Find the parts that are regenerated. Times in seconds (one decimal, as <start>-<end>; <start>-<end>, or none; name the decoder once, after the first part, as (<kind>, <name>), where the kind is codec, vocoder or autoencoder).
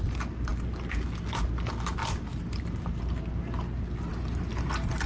2.0-3.0 (vocoder, BigVGAN v2)